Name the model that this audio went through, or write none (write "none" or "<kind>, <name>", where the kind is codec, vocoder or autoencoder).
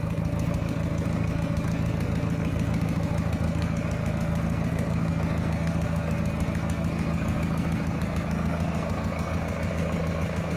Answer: codec, SNAC